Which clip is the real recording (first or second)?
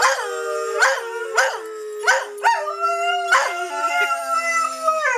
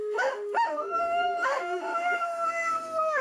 first